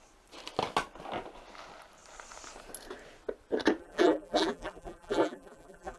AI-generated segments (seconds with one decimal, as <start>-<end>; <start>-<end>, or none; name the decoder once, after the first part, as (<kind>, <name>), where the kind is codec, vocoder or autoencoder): 3.8-6.0 (vocoder, BigVGAN v2)